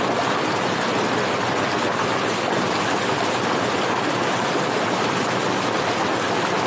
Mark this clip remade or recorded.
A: recorded